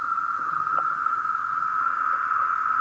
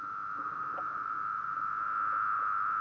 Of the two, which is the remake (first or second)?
first